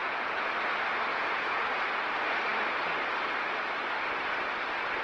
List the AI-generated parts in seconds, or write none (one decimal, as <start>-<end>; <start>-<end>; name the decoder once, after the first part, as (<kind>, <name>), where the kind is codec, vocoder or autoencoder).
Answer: 0.0-0.5 (vocoder, Vocos); 1.1-1.6